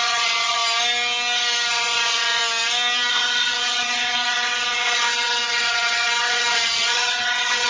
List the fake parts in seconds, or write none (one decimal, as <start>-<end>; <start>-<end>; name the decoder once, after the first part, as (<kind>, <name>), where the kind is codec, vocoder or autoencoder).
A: 0.0-0.6 (vocoder, WaveNeXt); 1.7-2.4; 3.1-7.7